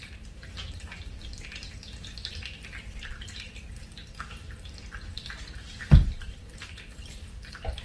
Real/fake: fake